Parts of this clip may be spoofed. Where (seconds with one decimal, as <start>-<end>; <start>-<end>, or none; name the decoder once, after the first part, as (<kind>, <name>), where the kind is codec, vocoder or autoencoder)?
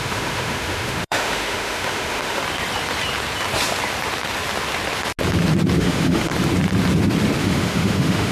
0.0-2.4 (autoencoder, DAC-VAE); 5.8-6.3; 7.4-8.3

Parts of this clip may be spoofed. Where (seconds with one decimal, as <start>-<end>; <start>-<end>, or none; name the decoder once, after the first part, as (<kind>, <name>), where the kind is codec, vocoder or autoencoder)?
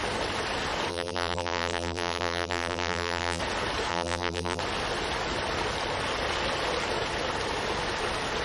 0.9-3.4 (vocoder, BigVGAN v2); 3.9-4.6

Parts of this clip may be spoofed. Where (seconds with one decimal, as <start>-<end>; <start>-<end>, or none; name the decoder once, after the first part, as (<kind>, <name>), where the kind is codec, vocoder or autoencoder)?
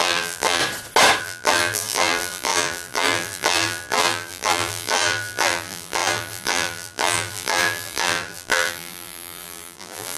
0.0-0.6 (vocoder, BigVGAN v2); 1.2-10.2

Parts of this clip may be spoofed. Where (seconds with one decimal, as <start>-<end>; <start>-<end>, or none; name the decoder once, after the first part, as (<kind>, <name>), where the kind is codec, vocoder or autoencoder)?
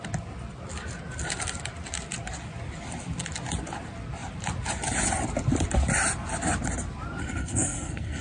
7.2-8.2 (codec, SNAC)